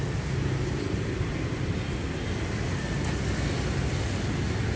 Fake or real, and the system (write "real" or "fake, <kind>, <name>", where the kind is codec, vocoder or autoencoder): real